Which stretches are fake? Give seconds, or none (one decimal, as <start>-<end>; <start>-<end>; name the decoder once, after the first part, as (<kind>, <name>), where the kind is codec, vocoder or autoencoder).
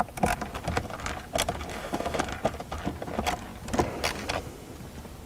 1.7-2.2 (autoencoder, DAC-VAE)